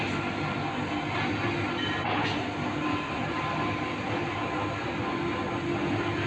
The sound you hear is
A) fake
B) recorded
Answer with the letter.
B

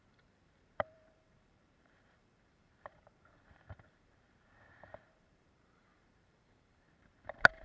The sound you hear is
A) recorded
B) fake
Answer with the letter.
B